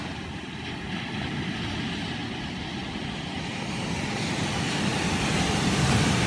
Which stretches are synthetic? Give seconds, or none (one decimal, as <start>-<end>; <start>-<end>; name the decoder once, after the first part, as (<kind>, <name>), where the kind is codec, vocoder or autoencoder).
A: none